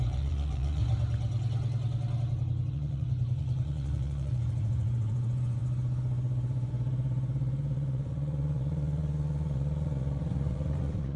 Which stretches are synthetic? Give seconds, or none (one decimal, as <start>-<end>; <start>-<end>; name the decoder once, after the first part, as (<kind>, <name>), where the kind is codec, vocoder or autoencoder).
0.0-0.8 (vocoder, Vocos); 2.7-11.2